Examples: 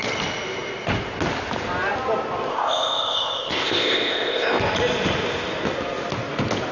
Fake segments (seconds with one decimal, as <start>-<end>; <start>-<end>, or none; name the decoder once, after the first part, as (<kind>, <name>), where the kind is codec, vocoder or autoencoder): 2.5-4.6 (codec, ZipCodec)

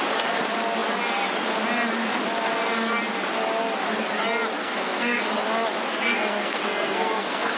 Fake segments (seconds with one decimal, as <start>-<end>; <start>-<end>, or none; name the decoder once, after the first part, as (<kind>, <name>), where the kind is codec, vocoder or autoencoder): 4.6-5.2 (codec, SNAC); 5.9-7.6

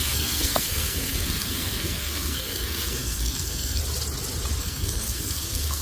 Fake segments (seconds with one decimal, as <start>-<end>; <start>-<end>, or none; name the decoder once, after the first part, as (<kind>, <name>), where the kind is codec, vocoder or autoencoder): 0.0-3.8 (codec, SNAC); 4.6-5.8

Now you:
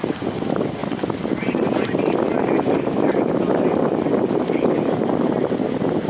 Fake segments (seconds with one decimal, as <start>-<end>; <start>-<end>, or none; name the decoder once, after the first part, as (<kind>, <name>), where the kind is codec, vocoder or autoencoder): none

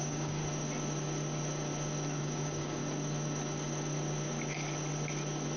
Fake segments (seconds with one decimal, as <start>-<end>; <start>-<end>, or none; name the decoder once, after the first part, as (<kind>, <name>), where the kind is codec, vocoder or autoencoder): 0.0-0.4 (codec, DAC); 2.2-2.8

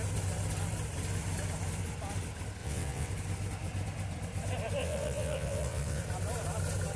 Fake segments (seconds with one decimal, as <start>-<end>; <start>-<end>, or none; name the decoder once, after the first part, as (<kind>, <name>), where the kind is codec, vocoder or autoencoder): 2.6-3.1 (vocoder, WaveNeXt); 4.8-6.0

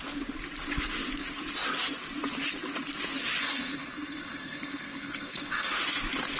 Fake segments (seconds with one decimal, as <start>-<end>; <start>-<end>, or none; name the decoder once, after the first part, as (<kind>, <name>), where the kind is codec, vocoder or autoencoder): 3.4-5.7 (codec, SNAC)